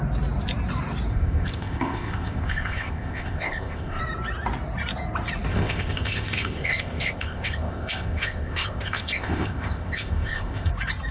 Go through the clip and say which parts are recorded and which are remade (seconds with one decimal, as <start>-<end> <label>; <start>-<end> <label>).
0.0-1.1 recorded; 1.1-4.0 remade; 4.0-5.5 recorded; 5.5-10.7 remade; 10.7-11.1 recorded